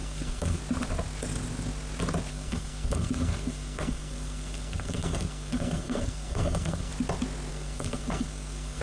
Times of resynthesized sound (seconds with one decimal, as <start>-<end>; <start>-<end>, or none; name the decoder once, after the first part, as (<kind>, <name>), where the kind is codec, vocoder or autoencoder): 0.0-0.6 (codec, SNAC); 2.3-6.9; 7.5-8.8